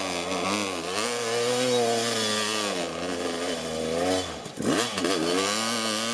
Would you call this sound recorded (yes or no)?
yes